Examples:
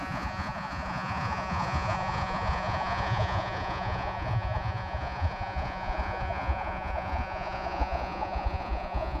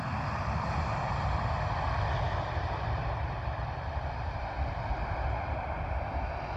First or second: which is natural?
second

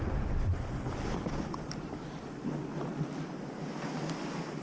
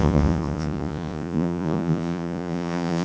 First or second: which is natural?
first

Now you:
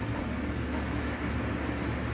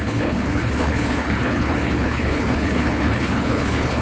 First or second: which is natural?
first